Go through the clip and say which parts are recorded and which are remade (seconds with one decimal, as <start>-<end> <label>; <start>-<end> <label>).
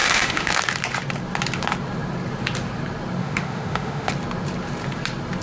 0.0-0.6 remade; 0.6-3.2 recorded; 3.2-4.1 remade; 4.1-5.4 recorded